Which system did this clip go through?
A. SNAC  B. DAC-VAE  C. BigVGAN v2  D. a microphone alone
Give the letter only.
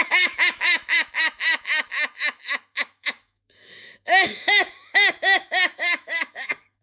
B